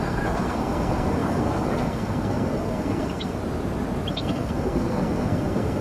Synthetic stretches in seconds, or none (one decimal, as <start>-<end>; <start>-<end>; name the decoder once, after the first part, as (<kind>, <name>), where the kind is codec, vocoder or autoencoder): 0.0-3.4 (codec, SNAC); 4.1-5.8